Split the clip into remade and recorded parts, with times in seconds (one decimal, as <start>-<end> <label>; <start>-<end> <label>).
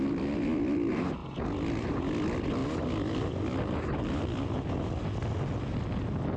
0.0-6.4 recorded